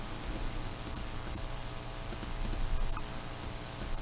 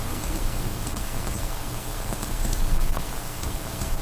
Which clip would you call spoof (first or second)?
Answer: second